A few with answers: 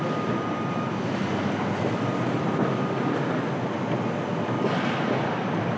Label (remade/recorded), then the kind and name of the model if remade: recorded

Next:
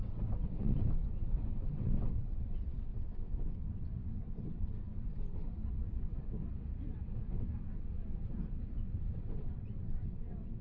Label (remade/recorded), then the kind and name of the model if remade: remade, vocoder, WaveNeXt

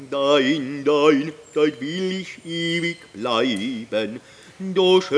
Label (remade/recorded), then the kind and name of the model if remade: recorded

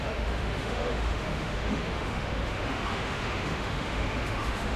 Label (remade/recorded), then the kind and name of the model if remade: remade, autoencoder, DAC-VAE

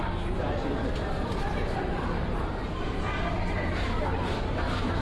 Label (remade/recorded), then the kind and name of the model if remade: remade, vocoder, BigVGAN v2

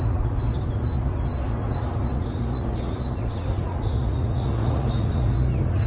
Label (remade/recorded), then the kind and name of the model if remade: remade, vocoder, Vocos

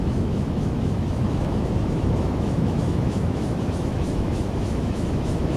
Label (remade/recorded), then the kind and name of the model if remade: remade, autoencoder, DAC-VAE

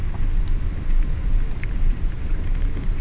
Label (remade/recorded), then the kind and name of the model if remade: recorded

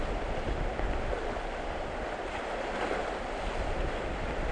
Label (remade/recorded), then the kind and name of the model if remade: recorded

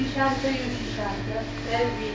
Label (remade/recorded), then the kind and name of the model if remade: recorded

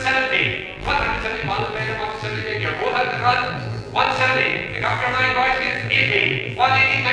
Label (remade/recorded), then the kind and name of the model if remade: remade, vocoder, BigVGAN v2